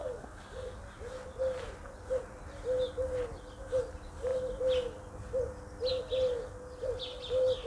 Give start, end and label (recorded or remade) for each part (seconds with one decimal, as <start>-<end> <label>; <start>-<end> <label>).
0.0-0.8 remade; 0.8-7.7 recorded